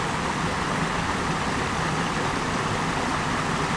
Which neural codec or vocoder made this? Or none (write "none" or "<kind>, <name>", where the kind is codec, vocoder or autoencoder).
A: none